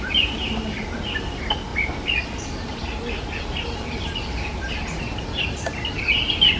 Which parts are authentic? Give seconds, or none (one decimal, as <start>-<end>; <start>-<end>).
0.0-6.6